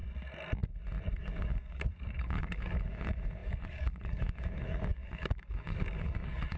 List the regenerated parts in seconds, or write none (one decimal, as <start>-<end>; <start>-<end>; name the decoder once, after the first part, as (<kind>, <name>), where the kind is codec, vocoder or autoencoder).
1.2-6.6 (codec, DAC)